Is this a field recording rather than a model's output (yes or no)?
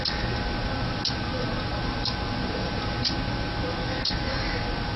yes